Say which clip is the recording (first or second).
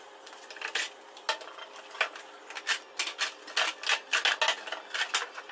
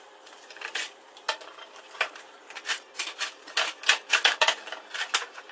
first